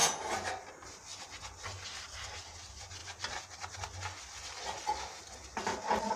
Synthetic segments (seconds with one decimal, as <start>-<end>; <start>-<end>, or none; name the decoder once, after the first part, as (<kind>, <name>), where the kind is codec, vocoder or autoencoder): none